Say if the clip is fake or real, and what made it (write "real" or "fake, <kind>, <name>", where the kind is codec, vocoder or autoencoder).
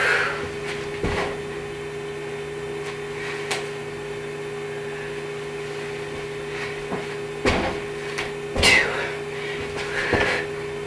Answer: real